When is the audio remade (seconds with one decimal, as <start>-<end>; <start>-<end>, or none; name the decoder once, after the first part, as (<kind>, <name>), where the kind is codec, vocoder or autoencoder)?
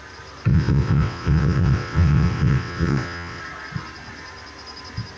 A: 0.5-3.4 (vocoder, WaveNeXt)